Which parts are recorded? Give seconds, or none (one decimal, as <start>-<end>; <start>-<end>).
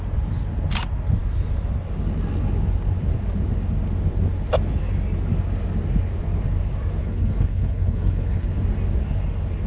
0.0-7.0; 8.6-9.7